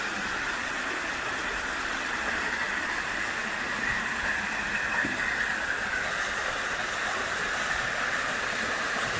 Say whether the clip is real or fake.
real